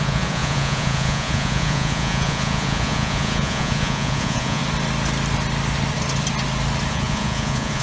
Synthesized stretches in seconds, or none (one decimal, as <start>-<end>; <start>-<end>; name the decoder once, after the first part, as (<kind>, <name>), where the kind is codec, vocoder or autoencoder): 0.0-4.6 (vocoder, Vocos); 6.9-7.8